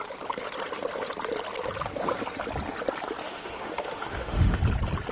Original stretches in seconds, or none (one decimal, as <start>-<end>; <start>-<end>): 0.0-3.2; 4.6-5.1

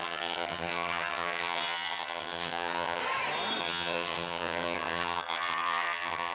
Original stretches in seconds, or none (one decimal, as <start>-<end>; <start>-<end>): 3.0-3.6

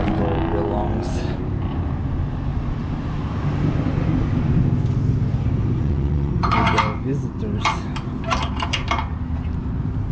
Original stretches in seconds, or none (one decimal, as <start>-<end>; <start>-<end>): 0.0-5.8; 6.3-10.1